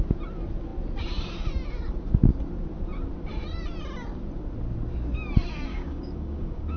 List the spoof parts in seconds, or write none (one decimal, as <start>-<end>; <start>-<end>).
5.7-6.8